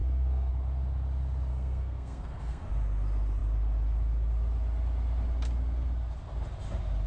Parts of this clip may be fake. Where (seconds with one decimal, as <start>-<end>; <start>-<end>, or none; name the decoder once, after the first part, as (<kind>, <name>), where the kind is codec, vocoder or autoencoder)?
0.0-0.5 (codec, SNAC); 1.5-2.7

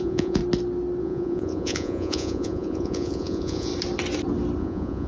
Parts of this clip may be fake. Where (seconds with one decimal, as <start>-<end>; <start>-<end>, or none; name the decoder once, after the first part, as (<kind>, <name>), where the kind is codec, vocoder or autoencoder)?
0.0-0.4 (vocoder, Vocos); 1.0-3.7; 4.6-5.1

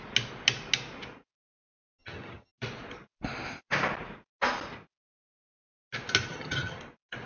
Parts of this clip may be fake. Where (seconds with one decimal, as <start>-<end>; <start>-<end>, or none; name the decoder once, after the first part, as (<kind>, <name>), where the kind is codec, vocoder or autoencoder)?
2.0-2.5 (vocoder, HiFi-GAN); 6.3-6.8

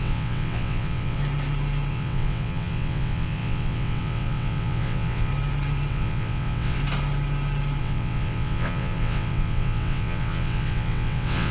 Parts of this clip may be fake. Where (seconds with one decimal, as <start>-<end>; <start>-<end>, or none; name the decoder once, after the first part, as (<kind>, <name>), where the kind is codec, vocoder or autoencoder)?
0.0-1.2 (vocoder, WaveNeXt); 1.9-5.3; 5.9-6.8; 7.8-11.5

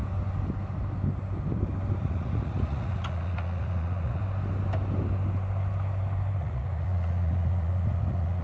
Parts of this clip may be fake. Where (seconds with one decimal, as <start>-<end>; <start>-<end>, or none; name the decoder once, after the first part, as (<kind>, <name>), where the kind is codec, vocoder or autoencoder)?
2.0-4.2 (vocoder, Vocos); 6.4-8.4

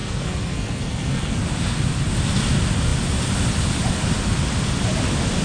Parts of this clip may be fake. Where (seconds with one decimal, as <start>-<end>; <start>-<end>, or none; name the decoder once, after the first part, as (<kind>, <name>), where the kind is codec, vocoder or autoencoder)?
0.0-1.4 (codec, SNAC)